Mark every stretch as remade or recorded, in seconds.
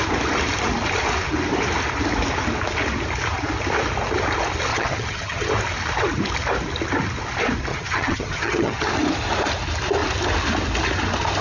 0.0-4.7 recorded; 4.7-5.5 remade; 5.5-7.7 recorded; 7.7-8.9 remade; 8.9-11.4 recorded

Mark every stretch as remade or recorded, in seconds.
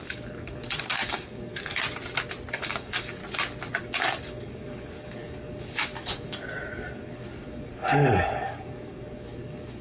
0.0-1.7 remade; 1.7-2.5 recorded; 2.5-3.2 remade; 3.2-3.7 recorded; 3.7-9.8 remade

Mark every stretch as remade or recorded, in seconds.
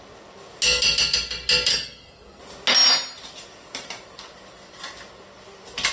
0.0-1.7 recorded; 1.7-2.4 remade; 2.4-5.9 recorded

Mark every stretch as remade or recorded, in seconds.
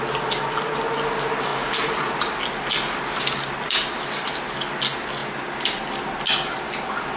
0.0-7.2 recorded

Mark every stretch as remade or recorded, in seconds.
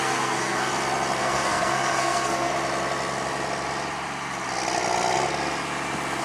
0.0-0.7 remade; 0.7-1.2 recorded; 1.2-2.5 remade; 2.5-6.2 recorded